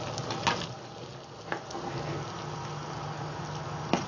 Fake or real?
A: real